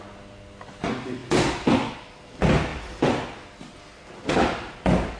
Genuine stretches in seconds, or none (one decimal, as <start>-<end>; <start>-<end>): 0.0-5.2